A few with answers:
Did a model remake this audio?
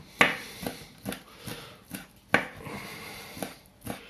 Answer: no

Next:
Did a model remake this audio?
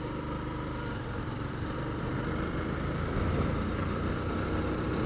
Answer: yes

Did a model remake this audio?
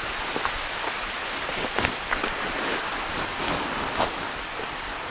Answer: yes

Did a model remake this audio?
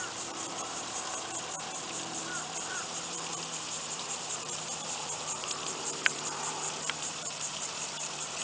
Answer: yes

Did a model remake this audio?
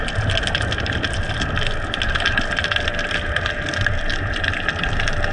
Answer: no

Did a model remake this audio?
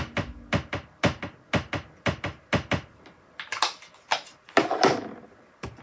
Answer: no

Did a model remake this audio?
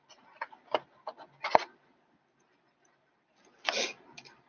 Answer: no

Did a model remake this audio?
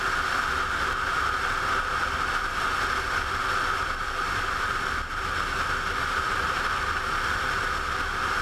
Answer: no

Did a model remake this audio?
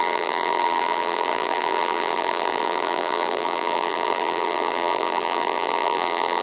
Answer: yes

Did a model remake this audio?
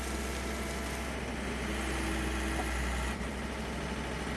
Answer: no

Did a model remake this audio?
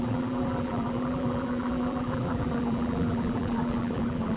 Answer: yes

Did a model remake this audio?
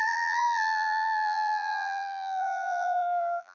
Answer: yes